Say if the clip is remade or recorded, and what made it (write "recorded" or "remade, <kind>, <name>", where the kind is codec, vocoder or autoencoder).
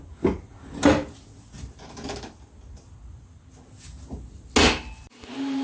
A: recorded